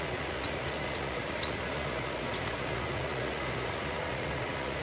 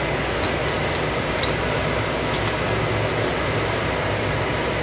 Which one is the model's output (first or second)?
first